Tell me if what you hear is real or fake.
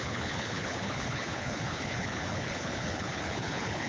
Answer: fake